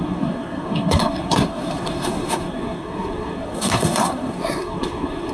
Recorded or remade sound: remade